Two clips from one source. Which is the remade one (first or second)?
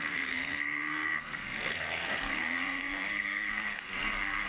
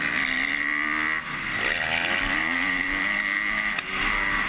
first